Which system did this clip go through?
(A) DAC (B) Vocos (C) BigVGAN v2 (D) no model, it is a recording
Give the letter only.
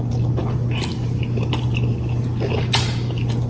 D